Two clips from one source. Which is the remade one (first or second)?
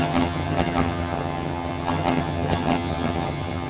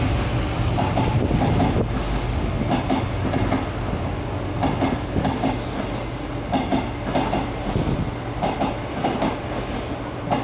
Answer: first